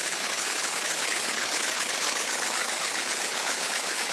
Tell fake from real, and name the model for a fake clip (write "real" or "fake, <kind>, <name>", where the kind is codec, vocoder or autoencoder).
fake, codec, HILCodec